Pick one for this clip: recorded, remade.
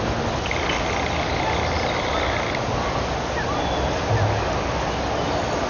recorded